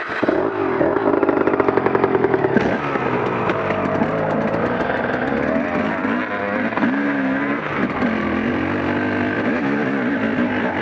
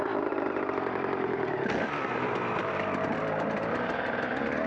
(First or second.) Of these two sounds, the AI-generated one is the second